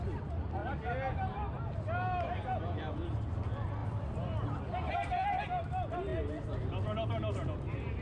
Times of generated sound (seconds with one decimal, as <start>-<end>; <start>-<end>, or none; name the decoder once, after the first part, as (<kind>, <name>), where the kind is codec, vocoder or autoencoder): none